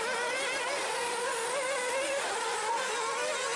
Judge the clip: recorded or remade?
recorded